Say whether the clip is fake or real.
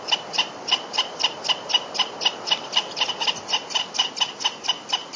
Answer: real